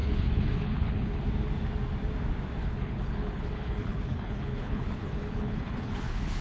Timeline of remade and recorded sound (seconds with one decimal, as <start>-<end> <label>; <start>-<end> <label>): 0.0-1.2 remade; 1.2-2.6 recorded; 2.6-6.4 remade

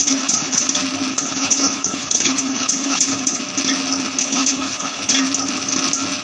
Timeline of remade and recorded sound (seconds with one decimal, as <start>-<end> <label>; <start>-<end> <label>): 0.0-0.6 remade; 0.6-1.1 recorded; 1.1-3.4 remade; 3.4-4.2 recorded; 4.2-5.1 remade; 5.1-6.2 recorded

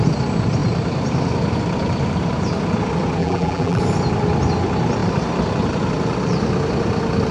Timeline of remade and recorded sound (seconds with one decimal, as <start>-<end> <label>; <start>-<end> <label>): 0.0-3.2 recorded; 3.2-3.8 remade; 3.8-7.3 recorded

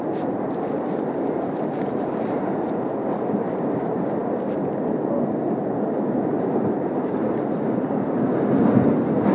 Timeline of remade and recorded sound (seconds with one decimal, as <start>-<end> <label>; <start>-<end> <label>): 0.0-9.3 recorded